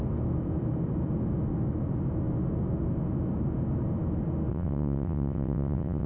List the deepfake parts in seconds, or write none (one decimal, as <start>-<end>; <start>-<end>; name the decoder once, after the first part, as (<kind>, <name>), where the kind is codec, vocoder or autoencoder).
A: 4.5-6.1 (vocoder, WaveNeXt)